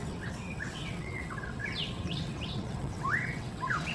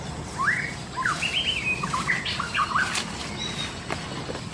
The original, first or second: second